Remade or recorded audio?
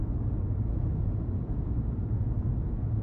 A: remade